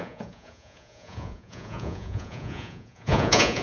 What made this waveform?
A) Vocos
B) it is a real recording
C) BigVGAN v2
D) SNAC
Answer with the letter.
A